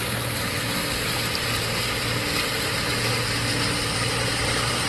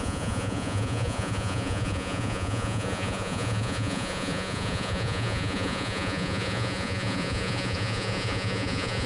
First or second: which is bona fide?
first